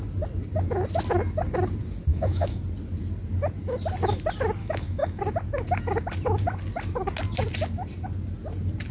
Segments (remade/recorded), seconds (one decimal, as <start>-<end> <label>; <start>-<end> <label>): 0.0-2.1 recorded; 2.1-2.6 remade; 2.6-4.6 recorded; 4.6-5.2 remade; 5.2-8.9 recorded